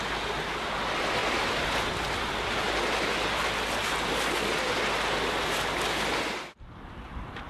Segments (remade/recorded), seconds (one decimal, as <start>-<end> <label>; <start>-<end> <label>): 0.0-1.2 recorded; 1.2-3.0 remade; 3.0-7.5 recorded